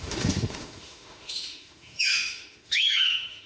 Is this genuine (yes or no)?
no